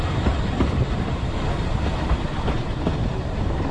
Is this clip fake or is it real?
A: fake